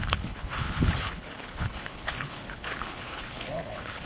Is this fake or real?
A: fake